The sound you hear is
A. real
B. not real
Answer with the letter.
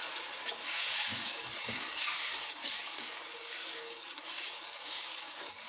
B